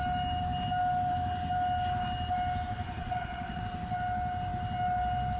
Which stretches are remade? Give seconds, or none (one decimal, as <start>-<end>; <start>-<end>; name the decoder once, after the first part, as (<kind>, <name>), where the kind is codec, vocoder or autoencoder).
3.0-3.6 (vocoder, WaveNeXt)